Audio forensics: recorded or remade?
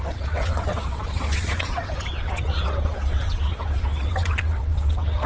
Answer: remade